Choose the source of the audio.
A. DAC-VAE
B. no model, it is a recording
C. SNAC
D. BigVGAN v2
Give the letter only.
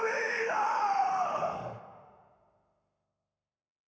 A